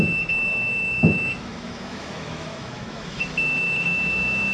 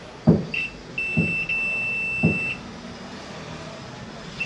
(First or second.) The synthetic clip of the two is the first